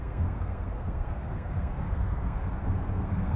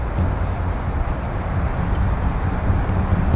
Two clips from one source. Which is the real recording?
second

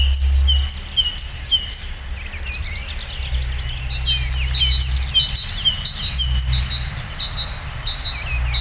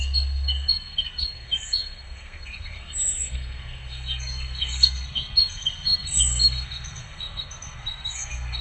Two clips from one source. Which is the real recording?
first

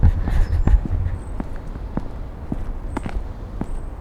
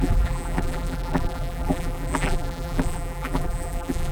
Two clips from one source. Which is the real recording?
first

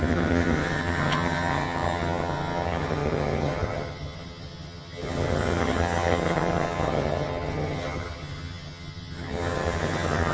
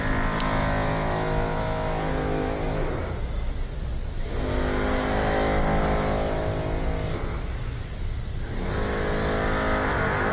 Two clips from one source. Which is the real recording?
second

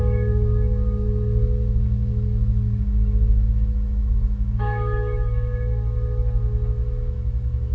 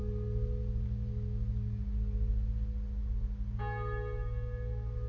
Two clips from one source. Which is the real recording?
second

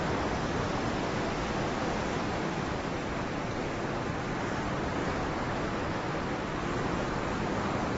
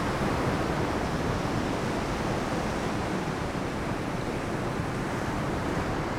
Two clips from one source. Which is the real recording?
first